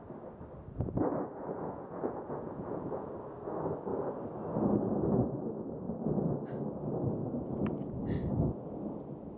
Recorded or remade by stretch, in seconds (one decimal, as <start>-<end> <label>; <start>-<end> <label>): 0.0-1.4 recorded; 1.4-3.1 remade; 3.1-9.4 recorded